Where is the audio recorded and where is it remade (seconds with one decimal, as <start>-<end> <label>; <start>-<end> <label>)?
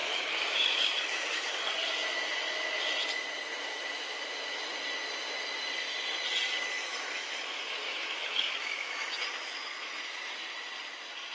0.0-1.6 remade; 1.6-6.8 recorded; 6.8-10.3 remade; 10.3-11.3 recorded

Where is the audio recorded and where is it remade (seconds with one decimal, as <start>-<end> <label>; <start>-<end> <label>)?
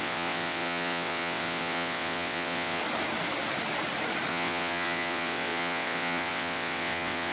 0.0-2.8 remade; 2.8-4.3 recorded; 4.3-7.3 remade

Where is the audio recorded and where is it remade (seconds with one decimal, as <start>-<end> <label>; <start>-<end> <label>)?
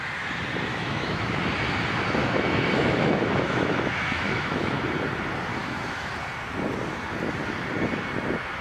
0.0-0.7 recorded; 0.7-1.4 remade; 1.4-2.2 recorded; 2.2-4.8 remade; 4.8-5.6 recorded; 5.6-6.1 remade; 6.1-8.6 recorded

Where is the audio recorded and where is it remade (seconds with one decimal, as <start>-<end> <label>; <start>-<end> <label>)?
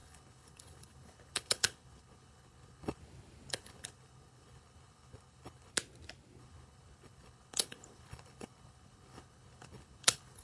0.0-3.0 remade; 3.0-3.5 recorded; 3.5-5.7 remade; 5.7-6.4 recorded; 6.4-10.4 remade